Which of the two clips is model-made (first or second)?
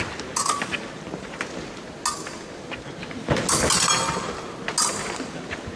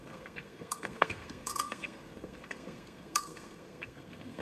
second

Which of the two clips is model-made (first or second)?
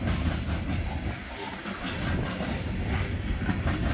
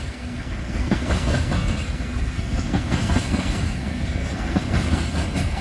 second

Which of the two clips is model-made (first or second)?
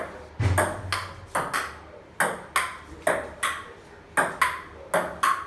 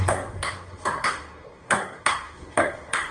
second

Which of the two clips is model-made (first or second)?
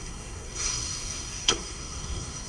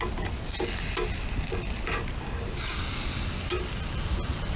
first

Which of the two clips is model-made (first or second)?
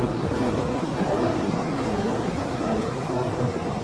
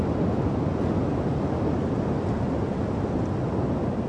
first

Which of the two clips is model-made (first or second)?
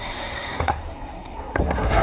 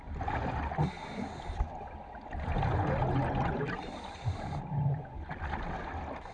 first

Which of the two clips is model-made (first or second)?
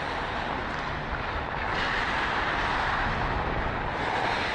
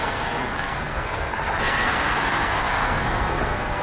second